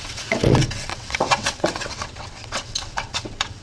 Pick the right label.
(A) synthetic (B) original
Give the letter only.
A